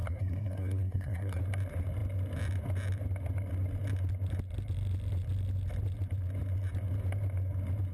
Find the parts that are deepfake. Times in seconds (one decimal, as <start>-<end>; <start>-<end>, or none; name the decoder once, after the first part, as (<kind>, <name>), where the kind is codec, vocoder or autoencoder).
0.0-1.4 (codec, SNAC)